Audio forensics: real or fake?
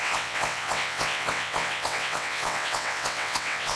fake